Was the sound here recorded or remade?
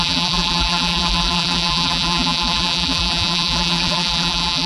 remade